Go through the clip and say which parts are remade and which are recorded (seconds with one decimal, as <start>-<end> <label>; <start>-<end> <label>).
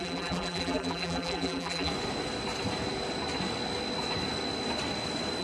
0.0-1.9 remade; 1.9-5.4 recorded